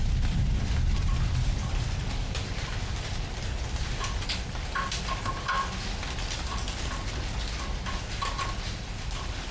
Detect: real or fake real